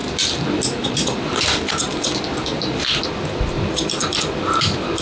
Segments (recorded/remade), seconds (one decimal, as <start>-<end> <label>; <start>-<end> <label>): 0.0-5.0 recorded